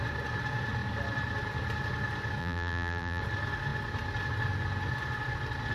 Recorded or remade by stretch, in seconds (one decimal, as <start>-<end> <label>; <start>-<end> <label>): 0.0-2.4 recorded; 2.4-3.2 remade; 3.2-5.7 recorded